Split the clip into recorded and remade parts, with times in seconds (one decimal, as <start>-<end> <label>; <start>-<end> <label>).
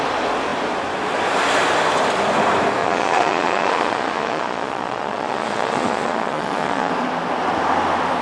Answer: 0.0-2.8 recorded; 2.8-6.9 remade; 6.9-8.2 recorded